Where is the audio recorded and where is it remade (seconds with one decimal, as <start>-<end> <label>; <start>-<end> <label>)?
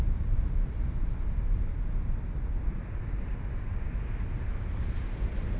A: 0.0-4.5 recorded; 4.5-5.6 remade